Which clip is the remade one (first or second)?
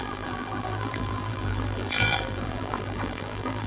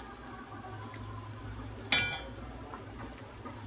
first